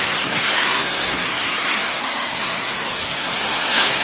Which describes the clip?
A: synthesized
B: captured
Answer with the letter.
A